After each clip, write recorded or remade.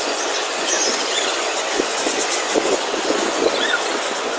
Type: remade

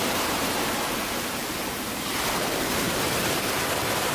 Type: remade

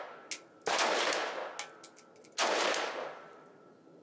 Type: recorded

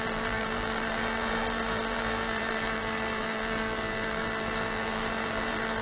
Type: remade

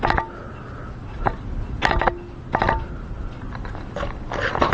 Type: recorded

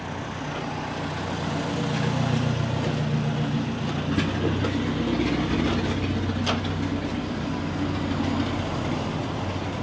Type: recorded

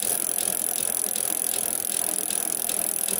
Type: recorded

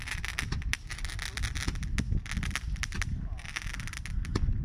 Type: recorded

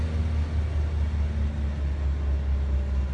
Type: recorded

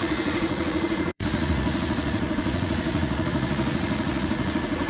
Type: remade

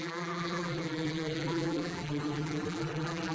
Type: remade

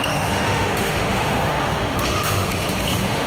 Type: remade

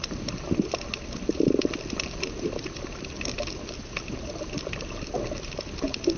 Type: recorded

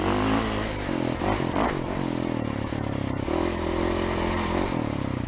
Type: recorded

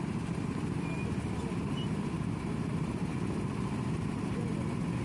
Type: recorded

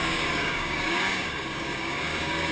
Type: remade